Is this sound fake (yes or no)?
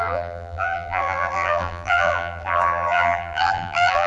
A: yes